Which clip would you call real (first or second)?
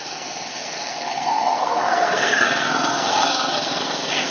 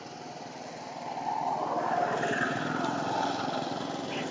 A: second